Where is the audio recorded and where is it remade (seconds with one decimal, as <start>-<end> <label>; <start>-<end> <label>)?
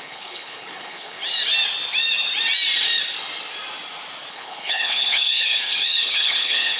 0.0-1.2 remade; 1.2-4.3 recorded; 4.3-6.8 remade